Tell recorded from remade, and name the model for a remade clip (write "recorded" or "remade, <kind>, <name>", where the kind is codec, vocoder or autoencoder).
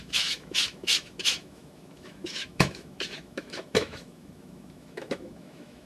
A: remade, autoencoder, DAC-VAE